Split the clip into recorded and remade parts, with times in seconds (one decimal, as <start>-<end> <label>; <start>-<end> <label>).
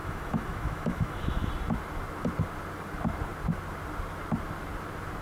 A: 0.0-1.5 remade; 1.5-5.2 recorded